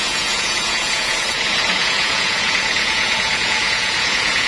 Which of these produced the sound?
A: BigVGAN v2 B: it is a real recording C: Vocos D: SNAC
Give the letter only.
C